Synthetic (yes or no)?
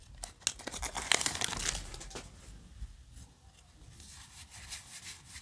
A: no